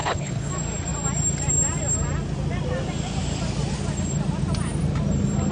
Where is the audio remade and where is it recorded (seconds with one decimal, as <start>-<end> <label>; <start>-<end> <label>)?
0.0-0.5 remade; 0.5-5.5 recorded